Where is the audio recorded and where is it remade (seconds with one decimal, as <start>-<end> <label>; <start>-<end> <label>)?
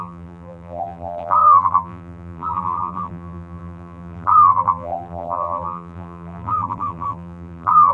0.0-7.9 remade